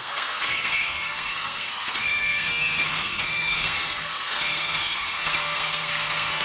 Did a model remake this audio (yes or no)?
yes